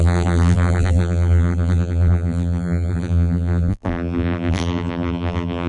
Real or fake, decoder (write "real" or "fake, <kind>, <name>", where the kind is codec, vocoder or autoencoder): fake, vocoder, BigVGAN v2